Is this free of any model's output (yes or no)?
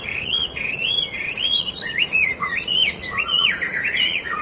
no